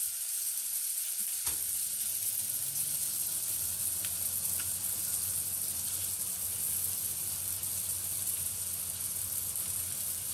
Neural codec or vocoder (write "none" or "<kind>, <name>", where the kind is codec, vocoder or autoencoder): none